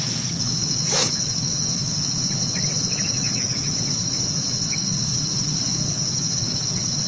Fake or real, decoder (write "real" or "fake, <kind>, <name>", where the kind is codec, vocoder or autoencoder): fake, autoencoder, DAC-VAE